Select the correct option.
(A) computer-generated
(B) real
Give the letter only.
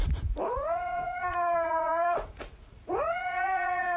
A